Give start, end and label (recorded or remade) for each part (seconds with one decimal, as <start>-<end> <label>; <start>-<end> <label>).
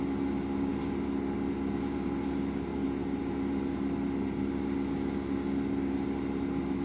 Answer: 0.0-6.8 recorded